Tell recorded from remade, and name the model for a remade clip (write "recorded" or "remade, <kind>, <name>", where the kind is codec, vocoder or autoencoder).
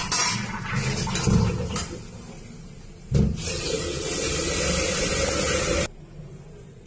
recorded